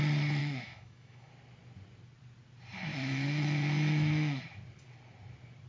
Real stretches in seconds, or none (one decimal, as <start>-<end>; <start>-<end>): 0.0-0.4; 1.3-2.9; 4.4-5.7

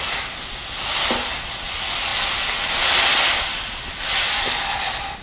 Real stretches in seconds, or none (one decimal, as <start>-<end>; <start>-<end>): 0.0-5.2

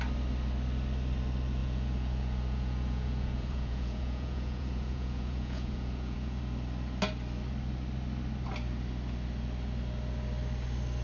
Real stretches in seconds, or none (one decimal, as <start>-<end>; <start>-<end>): 0.0-1.6; 6.4-11.0

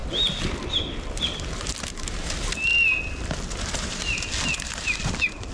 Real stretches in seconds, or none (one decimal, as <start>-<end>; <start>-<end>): 0.0-5.5

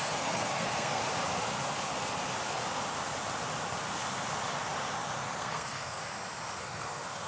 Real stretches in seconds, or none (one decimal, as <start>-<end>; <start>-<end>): 1.0-5.4; 6.0-6.6

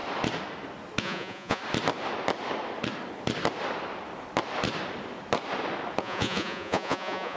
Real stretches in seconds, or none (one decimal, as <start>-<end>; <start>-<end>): 0.0-1.0; 1.6-6.0

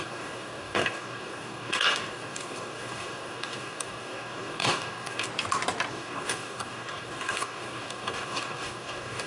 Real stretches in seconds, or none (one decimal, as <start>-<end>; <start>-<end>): 5.3-5.9